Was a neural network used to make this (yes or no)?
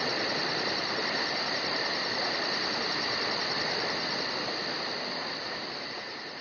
no